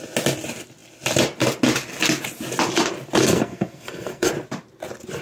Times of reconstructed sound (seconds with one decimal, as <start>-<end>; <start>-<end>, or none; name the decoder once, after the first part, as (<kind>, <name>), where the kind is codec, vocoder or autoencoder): 3.2-4.3 (codec, SNAC)